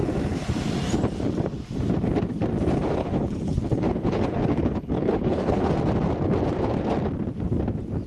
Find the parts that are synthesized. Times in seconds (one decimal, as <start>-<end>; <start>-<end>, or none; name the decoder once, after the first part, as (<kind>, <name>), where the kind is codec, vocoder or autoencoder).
3.0-5.7 (codec, HILCodec)